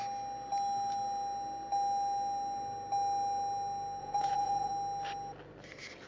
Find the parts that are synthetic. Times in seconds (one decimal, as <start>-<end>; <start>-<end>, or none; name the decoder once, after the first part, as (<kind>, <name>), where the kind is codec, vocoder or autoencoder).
4.0-4.7 (vocoder, Vocos)